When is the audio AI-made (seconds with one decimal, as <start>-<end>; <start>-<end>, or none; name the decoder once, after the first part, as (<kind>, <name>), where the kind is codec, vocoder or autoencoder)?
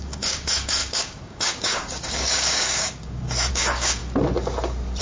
0.0-4.0 (codec, DAC)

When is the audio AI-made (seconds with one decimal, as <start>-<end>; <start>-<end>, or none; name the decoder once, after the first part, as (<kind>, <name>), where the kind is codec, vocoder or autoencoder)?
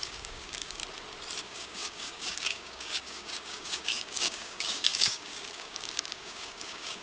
0.0-0.8 (codec, DAC); 1.4-7.0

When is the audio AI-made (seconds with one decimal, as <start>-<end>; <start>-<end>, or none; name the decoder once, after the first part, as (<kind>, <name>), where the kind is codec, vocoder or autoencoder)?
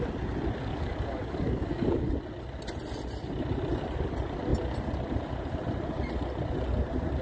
0.7-2.1 (codec, DAC)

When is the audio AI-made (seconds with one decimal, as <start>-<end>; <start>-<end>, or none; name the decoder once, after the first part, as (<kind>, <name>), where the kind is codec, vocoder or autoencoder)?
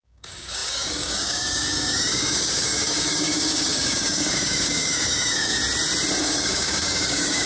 0.0-5.6 (codec, DAC); 6.2-7.5